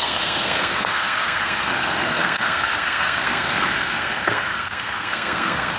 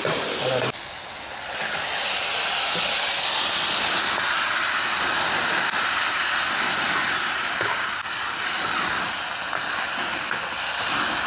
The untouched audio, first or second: second